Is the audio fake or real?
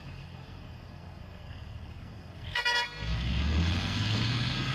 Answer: fake